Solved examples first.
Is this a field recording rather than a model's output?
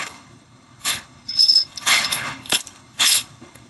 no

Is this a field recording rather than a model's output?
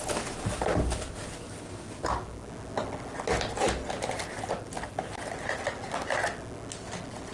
yes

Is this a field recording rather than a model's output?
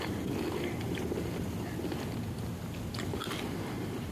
yes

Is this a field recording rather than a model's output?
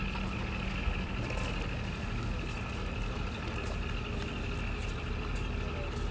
yes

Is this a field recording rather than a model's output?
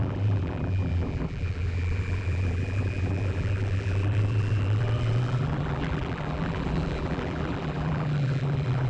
no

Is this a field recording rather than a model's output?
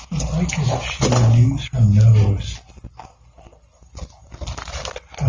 yes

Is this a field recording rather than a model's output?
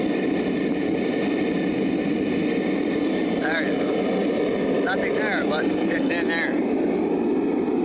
yes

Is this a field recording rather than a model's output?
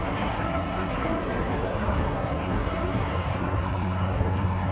no